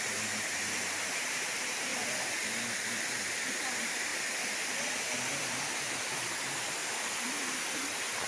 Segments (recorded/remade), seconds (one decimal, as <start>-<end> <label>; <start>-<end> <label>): 0.0-1.9 remade; 1.9-3.5 recorded; 3.5-4.1 remade; 4.1-5.3 recorded; 5.3-6.8 remade; 6.8-7.3 recorded; 7.3-8.3 remade